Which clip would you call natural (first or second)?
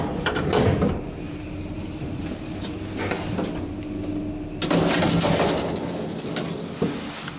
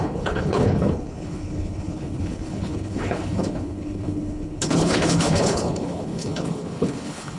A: first